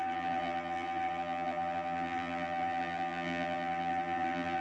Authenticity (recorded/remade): remade